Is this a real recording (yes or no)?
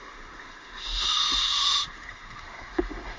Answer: no